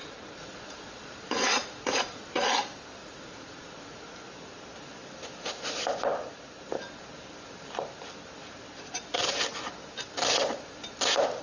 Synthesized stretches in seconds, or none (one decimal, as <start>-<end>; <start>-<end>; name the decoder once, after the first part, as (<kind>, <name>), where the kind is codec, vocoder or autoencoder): 0.0-2.5 (vocoder, Vocos); 3.0-4.2